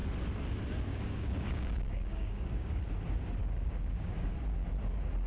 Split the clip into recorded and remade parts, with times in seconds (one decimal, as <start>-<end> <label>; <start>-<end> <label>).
0.0-0.9 recorded; 0.9-2.8 remade; 2.8-3.4 recorded; 3.4-4.1 remade; 4.1-5.3 recorded